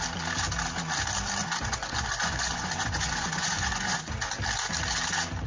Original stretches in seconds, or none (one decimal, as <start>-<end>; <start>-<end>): 0.0-1.4; 4.3-5.5